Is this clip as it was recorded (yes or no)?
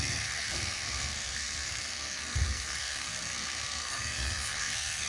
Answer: no